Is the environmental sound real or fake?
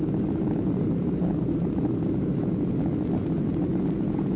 real